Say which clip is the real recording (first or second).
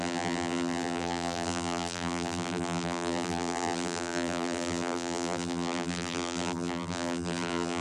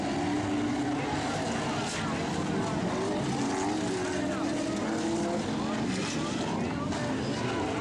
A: second